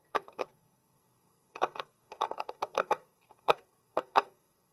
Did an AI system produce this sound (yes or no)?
yes